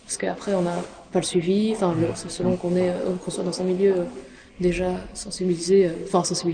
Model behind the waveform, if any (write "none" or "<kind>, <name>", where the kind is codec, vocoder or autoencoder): none